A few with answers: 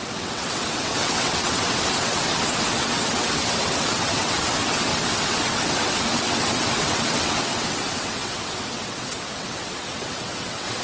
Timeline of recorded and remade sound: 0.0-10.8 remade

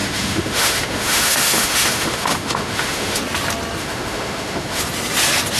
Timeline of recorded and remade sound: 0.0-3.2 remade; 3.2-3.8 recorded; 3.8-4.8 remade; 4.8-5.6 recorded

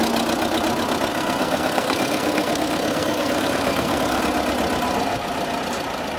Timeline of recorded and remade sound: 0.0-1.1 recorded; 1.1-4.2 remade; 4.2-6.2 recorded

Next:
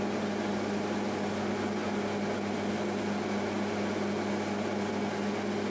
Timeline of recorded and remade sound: 0.0-5.7 recorded

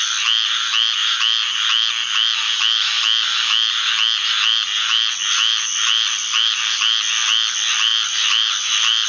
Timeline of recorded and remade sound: 0.0-9.1 recorded

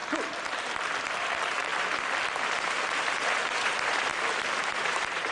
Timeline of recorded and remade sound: 0.0-1.2 recorded; 1.2-1.7 remade; 1.7-3.0 recorded; 3.0-4.1 remade; 4.1-4.7 recorded; 4.7-5.3 remade

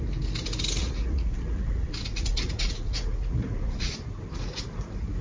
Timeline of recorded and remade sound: 0.0-0.8 recorded; 0.8-3.9 remade; 3.9-5.2 recorded